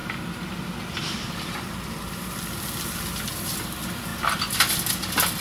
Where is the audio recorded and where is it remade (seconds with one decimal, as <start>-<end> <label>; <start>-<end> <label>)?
0.0-4.1 remade; 4.1-4.9 recorded; 4.9-5.4 remade